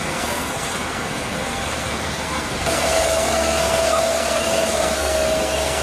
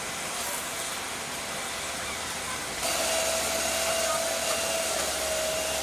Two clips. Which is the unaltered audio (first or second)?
second